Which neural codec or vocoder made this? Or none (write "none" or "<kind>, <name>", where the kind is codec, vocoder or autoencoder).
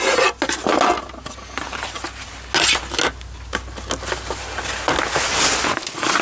none